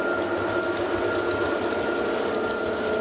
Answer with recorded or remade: recorded